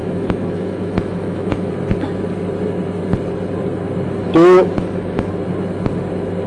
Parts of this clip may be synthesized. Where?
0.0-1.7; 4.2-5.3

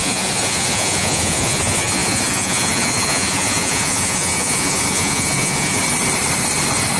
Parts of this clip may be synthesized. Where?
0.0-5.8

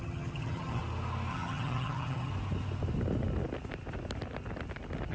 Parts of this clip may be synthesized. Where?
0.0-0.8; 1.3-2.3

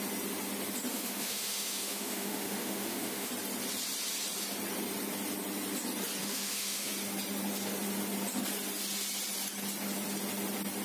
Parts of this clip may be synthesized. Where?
0.9-3.3; 6.2-6.9

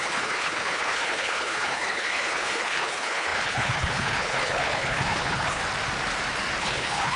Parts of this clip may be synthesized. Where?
0.0-5.6; 6.6-7.2

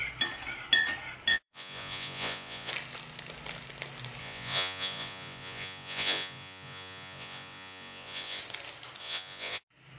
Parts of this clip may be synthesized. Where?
1.3-2.7; 4.2-8.4; 9.0-9.6

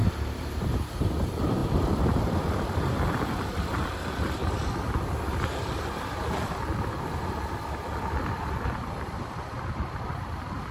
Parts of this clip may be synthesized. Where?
0.0-10.7

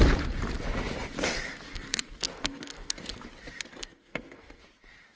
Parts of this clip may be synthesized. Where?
1.7-3.0; 3.7-4.6